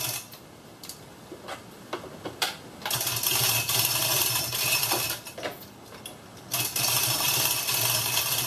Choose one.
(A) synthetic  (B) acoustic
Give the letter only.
B